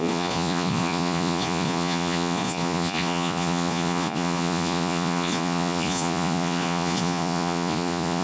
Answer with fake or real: fake